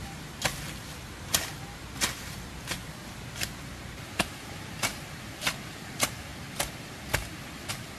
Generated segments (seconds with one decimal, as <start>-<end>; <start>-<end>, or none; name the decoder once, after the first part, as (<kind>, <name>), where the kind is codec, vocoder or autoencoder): 0.0-0.5 (vocoder, BigVGAN v2); 3.1-6.3